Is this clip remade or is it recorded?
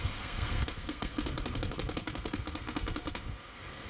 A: remade